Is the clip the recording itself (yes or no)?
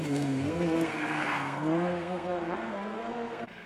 no